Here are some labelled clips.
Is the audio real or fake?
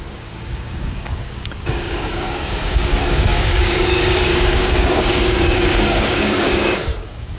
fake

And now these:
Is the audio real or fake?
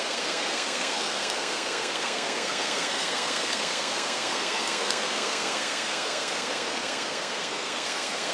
fake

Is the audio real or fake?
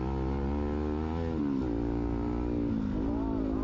real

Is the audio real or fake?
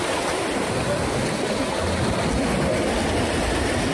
real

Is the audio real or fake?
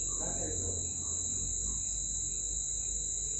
real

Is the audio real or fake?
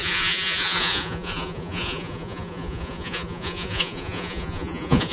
fake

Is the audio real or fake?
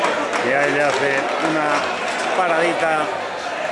real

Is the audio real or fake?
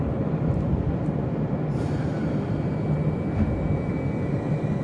real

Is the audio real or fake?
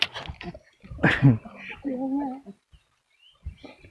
real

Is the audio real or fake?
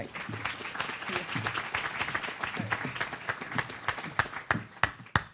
real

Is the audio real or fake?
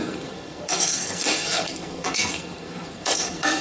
fake